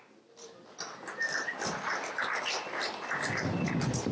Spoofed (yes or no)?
no